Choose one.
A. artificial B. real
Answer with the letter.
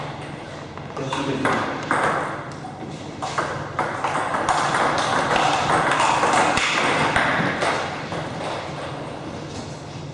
B